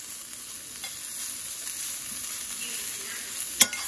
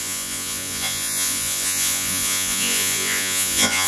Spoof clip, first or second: second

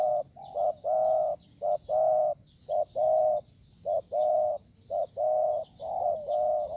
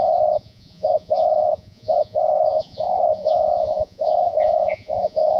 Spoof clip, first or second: second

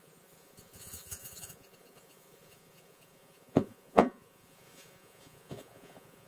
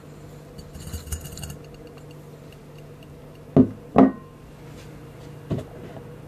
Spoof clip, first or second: first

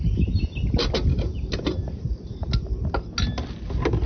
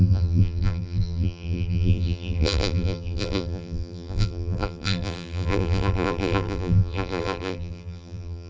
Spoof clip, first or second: second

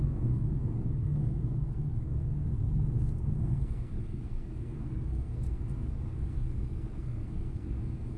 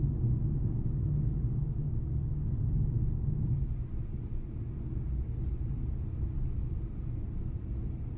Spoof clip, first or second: first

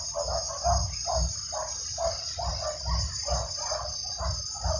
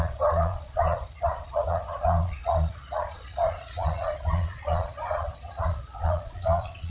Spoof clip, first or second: second